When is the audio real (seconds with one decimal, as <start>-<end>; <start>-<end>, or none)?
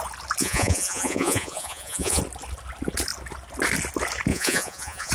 0.0-0.4; 2.2-4.3